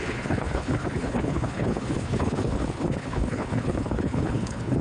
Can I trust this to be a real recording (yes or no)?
no